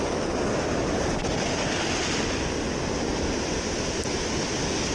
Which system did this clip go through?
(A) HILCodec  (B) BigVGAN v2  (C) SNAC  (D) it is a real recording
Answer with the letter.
D